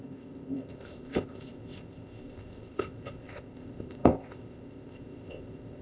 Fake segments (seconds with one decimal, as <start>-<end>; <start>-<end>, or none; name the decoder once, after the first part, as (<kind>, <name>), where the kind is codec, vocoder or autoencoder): 0.0-5.8 (codec, ZipCodec)